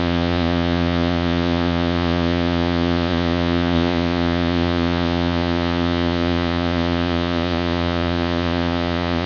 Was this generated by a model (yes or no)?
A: yes